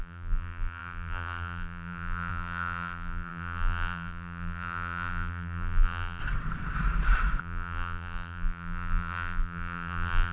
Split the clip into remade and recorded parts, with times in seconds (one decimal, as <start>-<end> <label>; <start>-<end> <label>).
0.0-6.2 remade; 6.2-7.4 recorded; 7.4-10.3 remade